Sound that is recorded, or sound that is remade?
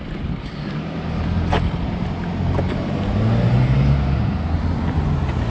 recorded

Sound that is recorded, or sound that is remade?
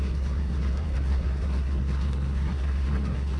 remade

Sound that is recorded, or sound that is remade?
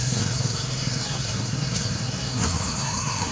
remade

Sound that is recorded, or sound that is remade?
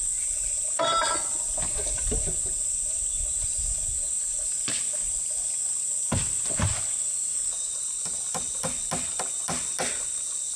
recorded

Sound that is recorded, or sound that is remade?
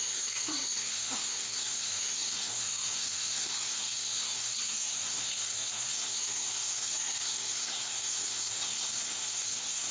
remade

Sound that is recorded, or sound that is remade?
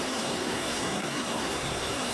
remade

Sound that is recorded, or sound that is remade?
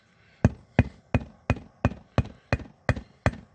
recorded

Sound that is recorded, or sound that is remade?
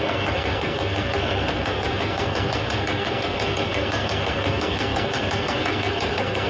remade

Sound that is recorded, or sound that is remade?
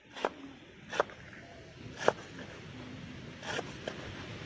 recorded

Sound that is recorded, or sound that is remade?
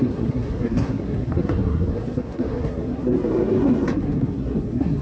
remade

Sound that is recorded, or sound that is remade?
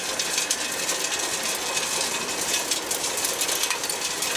recorded